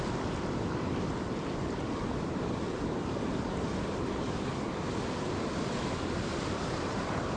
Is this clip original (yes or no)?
no